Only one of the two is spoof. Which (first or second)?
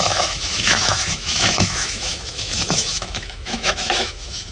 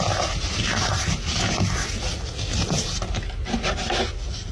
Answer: first